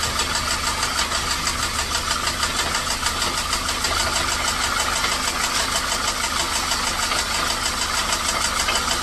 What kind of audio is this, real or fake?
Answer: real